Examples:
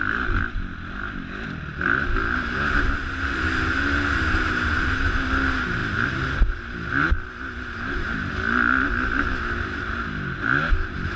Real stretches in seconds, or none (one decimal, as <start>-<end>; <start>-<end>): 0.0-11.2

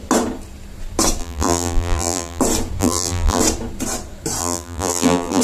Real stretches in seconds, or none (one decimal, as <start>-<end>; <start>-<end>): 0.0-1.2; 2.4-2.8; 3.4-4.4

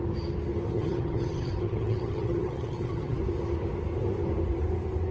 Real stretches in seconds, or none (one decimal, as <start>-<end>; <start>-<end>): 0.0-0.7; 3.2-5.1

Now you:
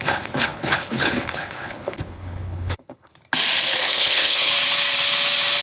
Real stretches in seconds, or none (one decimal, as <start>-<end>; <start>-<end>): 3.1-3.8; 4.5-5.6